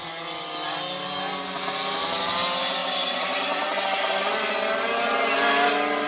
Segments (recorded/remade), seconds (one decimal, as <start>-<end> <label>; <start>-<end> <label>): 0.0-2.8 recorded; 2.8-4.0 remade; 4.0-6.1 recorded